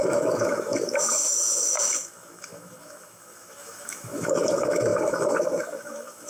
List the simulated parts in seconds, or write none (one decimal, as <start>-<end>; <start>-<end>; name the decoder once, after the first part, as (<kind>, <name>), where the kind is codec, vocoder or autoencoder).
0.0-6.3 (autoencoder, DAC-VAE)